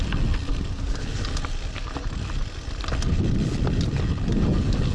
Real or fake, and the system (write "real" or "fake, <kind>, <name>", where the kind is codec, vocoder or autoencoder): real